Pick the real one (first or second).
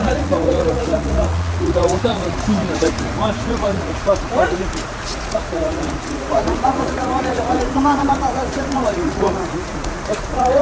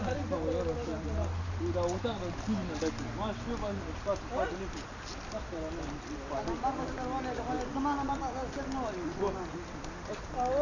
second